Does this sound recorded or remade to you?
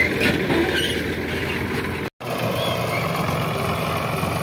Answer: recorded